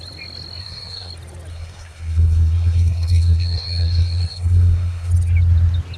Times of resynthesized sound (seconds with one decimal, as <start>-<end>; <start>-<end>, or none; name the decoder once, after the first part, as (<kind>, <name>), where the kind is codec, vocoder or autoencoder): 0.6-1.1 (codec, SNAC); 1.5-5.1